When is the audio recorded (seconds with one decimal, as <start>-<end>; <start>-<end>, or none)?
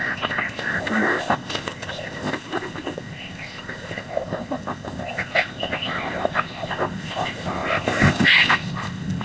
none